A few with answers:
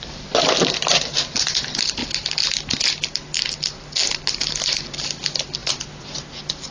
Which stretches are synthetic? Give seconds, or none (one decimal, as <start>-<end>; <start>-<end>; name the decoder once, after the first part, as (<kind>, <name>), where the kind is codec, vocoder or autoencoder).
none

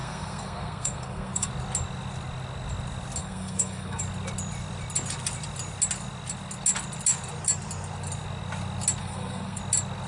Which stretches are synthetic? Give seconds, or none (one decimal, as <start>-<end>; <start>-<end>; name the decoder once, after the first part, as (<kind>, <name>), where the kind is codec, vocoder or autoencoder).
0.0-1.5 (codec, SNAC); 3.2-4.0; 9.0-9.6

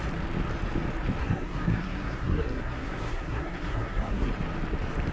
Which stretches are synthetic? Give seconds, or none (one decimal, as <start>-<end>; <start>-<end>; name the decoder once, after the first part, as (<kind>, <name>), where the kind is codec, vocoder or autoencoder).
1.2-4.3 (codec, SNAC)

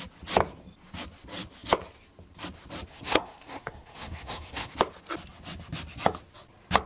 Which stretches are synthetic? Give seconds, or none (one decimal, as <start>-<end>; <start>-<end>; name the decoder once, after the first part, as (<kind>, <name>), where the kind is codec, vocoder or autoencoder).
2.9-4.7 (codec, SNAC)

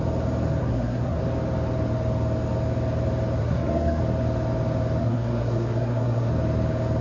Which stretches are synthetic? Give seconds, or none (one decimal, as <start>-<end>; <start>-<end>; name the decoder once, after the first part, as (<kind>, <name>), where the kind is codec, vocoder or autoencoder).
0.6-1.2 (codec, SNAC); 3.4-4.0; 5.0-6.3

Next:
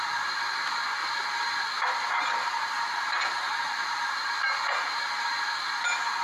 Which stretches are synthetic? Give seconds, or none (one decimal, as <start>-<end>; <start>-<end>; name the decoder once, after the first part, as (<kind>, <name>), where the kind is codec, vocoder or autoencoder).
none

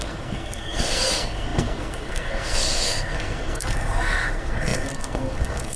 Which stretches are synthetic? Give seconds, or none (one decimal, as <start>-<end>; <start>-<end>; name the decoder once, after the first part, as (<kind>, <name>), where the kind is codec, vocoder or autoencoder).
0.0-5.8 (codec, SNAC)